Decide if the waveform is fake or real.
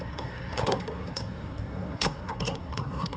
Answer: fake